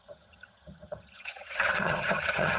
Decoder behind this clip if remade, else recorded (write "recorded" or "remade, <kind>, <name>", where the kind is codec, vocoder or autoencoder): remade, vocoder, HiFi-GAN